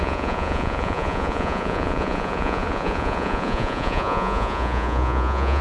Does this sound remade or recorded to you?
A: remade